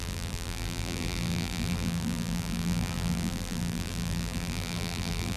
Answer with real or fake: fake